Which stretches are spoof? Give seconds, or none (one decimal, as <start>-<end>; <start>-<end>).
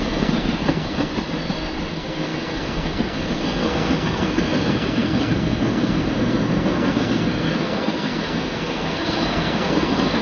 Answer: 0.0-1.1; 1.9-10.2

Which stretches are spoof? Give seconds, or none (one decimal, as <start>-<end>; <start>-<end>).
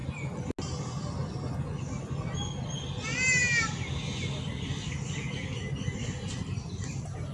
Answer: none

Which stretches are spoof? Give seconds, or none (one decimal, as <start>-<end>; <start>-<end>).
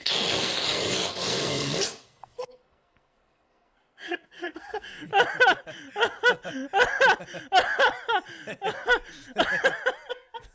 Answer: 0.0-5.1; 10.1-10.5